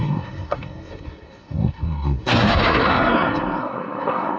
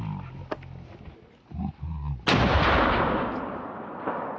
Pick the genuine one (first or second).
second